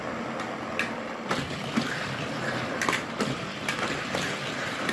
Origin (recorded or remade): recorded